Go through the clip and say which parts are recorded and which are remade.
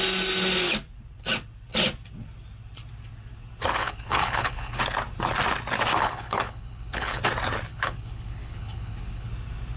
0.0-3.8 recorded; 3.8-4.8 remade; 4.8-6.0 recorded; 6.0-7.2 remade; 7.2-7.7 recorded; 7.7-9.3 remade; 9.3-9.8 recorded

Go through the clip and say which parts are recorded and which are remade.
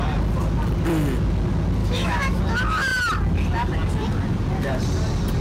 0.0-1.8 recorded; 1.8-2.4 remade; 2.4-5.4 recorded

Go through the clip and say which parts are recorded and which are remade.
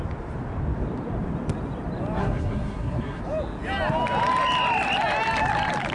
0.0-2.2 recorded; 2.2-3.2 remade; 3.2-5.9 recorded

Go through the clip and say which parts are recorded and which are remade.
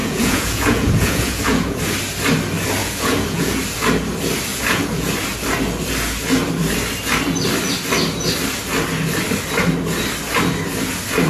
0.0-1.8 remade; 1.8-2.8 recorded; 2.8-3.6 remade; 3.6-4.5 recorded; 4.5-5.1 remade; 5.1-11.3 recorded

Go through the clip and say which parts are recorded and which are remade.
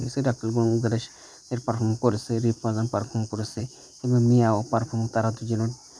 0.0-3.1 recorded; 3.1-3.6 remade; 3.6-6.0 recorded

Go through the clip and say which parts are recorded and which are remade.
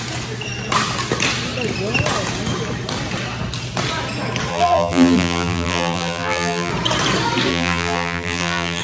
0.0-4.5 recorded; 4.5-6.7 remade; 6.7-7.5 recorded; 7.5-8.8 remade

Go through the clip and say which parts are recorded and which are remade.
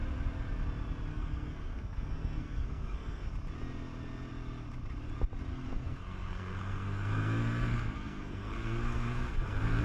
0.0-1.1 recorded; 1.1-3.3 remade; 3.3-5.5 recorded; 5.5-9.8 remade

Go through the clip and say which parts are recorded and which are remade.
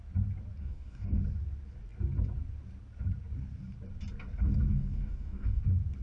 0.0-0.6 recorded; 0.6-1.2 remade; 1.2-4.7 recorded; 4.7-5.6 remade; 5.6-6.0 recorded